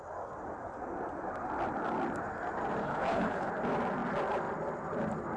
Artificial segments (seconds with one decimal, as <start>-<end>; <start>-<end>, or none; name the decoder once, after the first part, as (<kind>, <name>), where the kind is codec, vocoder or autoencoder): 2.8-3.5 (codec, HILCodec)